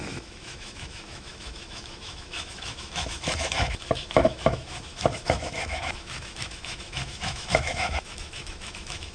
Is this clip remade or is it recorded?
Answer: remade